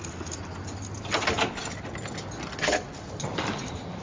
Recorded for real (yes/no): yes